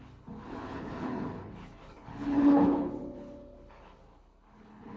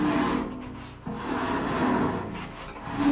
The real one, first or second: second